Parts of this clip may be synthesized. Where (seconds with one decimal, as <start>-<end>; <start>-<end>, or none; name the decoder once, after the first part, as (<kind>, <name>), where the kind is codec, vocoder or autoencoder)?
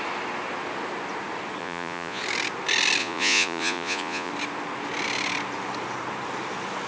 1.6-2.2 (vocoder, Vocos); 3.0-4.3